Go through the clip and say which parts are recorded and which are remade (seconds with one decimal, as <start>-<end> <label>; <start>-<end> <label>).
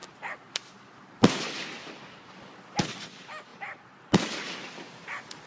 0.0-5.5 recorded